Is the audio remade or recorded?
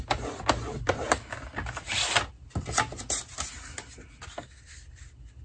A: recorded